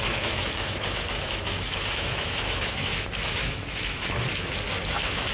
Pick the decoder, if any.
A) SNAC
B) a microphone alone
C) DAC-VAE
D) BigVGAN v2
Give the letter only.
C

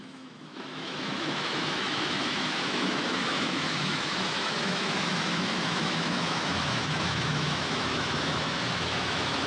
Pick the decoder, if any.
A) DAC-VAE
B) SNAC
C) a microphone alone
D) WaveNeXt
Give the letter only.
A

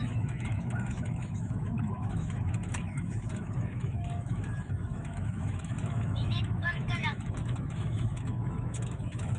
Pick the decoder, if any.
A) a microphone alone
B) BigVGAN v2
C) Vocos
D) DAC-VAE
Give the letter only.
D